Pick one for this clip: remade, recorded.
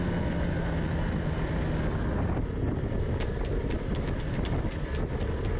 recorded